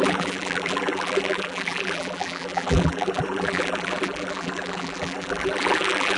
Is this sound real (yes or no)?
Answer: no